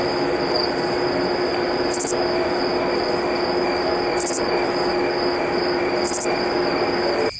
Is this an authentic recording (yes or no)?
yes